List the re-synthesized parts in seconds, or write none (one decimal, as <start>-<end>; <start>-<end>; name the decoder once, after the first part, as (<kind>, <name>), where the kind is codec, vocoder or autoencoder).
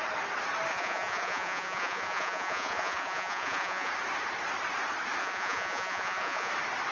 0.7-3.9 (vocoder, Vocos); 5.2-6.5